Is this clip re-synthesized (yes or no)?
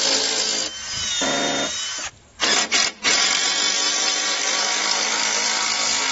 no